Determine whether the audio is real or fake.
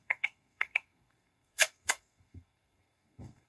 fake